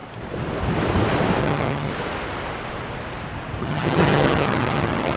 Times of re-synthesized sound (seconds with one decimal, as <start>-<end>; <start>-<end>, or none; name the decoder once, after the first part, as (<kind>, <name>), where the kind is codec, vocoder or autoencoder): 1.4-1.9 (vocoder, HiFi-GAN); 3.6-5.2